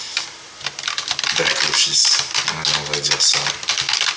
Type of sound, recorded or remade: recorded